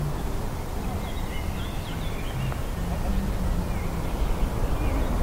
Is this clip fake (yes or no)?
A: no